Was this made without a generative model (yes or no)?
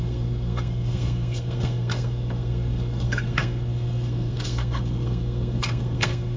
no